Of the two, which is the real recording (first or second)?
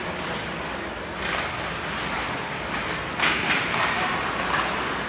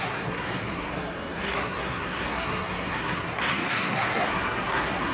first